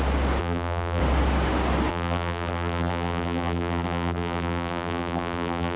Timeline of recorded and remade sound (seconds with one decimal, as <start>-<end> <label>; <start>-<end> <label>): 0.0-0.4 recorded; 0.4-1.0 remade; 1.0-1.9 recorded; 1.9-5.8 remade